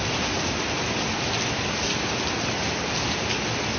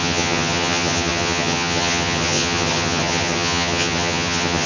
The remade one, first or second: second